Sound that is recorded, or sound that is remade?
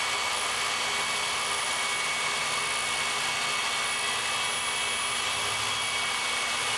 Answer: recorded